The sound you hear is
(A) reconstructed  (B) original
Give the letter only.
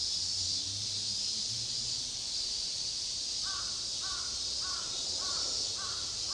A